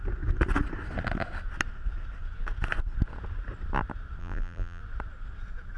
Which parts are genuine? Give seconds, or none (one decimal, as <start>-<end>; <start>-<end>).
0.0-4.2; 4.8-5.8